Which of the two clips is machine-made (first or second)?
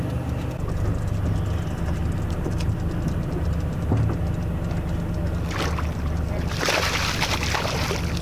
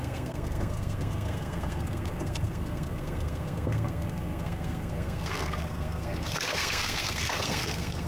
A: second